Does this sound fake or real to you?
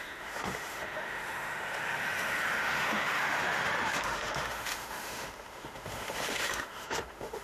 fake